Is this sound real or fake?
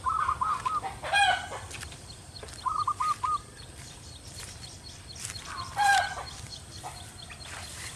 fake